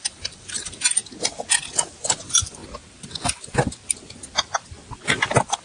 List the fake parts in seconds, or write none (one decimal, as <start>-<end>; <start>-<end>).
0.0-1.0; 2.1-2.6